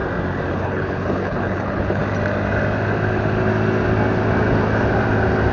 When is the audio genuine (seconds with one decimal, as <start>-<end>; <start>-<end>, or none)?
0.0-0.5; 2.0-5.5